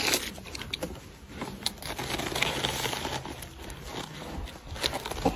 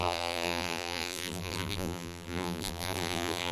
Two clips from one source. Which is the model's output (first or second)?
second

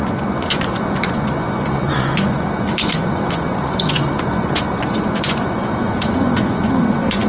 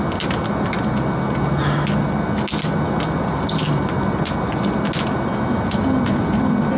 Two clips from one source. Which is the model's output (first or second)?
first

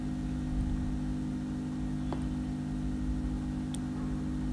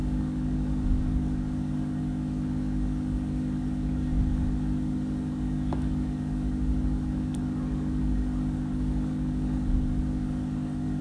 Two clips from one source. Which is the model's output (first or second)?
second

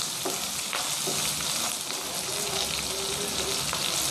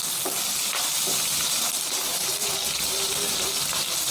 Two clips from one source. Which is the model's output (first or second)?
second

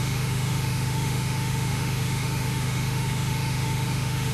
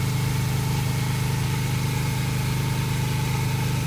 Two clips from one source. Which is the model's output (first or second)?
first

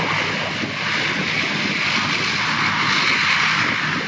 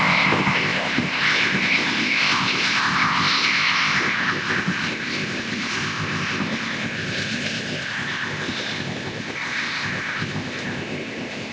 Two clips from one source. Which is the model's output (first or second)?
second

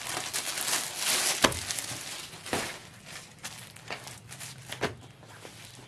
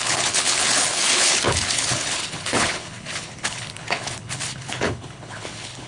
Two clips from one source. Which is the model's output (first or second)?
second